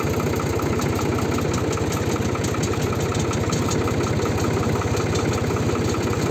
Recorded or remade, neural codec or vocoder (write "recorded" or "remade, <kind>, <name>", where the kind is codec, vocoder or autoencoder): recorded